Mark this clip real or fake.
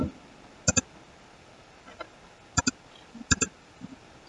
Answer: real